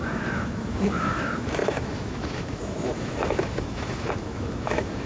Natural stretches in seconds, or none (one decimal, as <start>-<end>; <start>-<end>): none